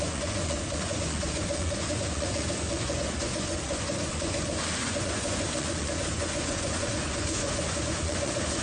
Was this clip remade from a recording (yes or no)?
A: yes